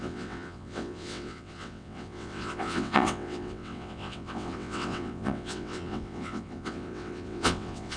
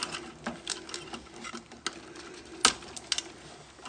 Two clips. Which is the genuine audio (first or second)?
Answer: second